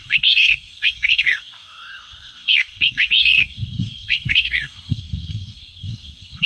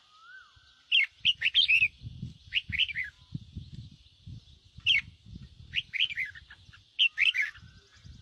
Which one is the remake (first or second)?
first